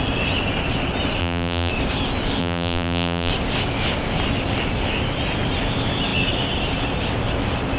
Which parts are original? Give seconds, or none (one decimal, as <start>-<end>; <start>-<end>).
0.0-1.2; 1.7-2.4; 3.3-7.8